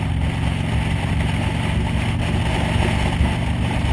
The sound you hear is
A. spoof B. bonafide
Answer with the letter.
B